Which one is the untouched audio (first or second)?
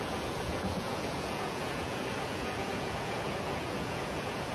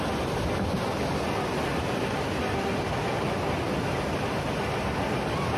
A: second